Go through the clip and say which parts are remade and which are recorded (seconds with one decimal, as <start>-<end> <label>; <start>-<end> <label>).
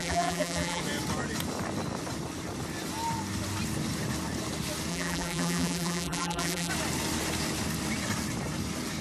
0.0-0.8 remade; 0.8-4.9 recorded; 4.9-6.7 remade; 6.7-9.0 recorded